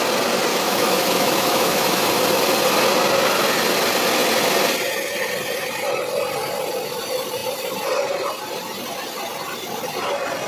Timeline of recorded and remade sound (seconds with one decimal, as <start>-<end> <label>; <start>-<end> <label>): 0.0-0.5 recorded; 0.5-2.0 remade; 2.0-10.5 recorded